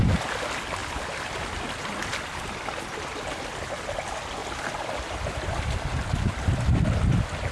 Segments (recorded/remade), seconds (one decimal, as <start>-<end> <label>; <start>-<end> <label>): 0.0-0.8 recorded; 0.8-1.6 remade; 1.6-4.4 recorded; 4.4-4.9 remade; 4.9-7.5 recorded